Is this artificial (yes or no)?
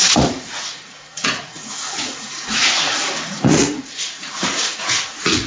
yes